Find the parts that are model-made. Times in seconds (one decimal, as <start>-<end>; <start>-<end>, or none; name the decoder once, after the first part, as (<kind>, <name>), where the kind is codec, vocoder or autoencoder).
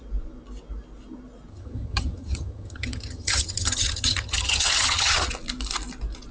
1.5-5.3 (vocoder, HiFi-GAN)